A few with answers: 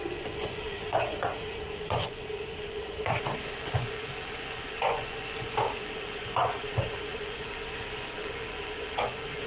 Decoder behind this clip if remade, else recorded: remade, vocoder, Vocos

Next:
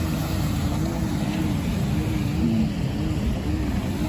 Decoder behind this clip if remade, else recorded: recorded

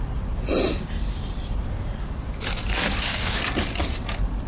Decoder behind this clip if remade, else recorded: recorded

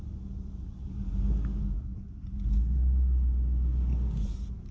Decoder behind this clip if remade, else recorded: recorded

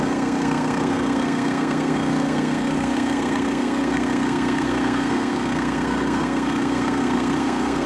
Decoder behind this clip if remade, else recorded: remade, codec, SNAC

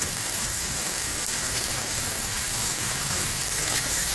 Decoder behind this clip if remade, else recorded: remade, codec, DAC